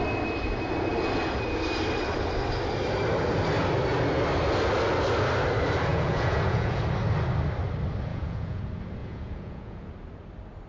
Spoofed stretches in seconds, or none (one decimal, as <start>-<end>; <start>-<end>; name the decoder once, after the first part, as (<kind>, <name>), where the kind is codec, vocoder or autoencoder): 5.9-6.8 (vocoder, Vocos); 8.1-8.6; 9.0-9.9